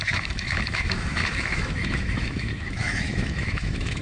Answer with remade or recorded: remade